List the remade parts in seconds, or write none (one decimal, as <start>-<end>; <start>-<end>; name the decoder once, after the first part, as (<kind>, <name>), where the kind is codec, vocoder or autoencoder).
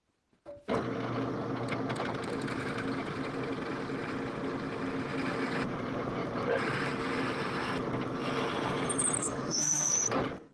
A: 9.2-9.9 (autoencoder, DAC-VAE)